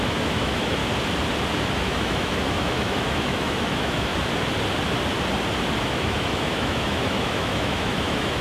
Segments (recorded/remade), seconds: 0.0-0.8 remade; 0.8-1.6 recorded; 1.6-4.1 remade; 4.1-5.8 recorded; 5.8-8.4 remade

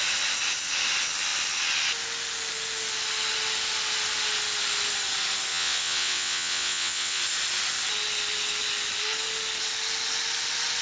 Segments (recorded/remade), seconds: 0.0-5.5 recorded; 5.5-7.2 remade; 7.2-10.8 recorded

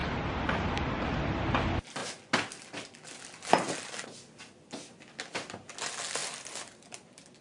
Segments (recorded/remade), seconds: 0.0-0.9 remade; 0.9-7.4 recorded

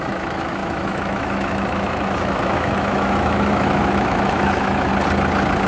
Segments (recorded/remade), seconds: 0.0-4.9 remade; 4.9-5.7 recorded

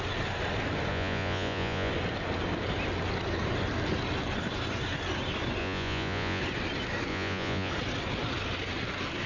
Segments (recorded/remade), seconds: 0.0-0.9 recorded; 0.9-1.9 remade; 1.9-5.6 recorded; 5.6-6.4 remade; 6.4-7.1 recorded; 7.1-7.7 remade; 7.7-9.3 recorded